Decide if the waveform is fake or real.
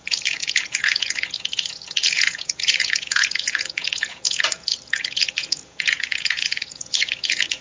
fake